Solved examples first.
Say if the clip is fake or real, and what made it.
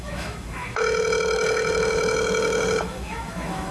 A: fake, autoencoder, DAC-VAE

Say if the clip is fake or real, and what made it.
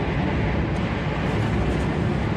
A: real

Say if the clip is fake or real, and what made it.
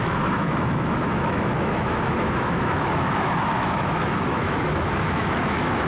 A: fake, autoencoder, DAC-VAE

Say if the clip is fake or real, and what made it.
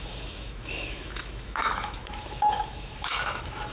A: fake, autoencoder, DAC-VAE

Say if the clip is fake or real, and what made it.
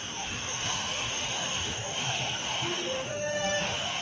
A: fake, autoencoder, DAC-VAE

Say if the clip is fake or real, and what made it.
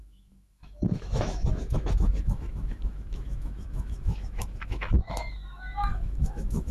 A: fake, autoencoder, DAC-VAE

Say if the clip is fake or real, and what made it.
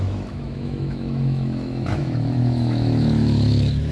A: fake, autoencoder, DAC-VAE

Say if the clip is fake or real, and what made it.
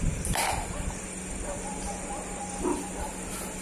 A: real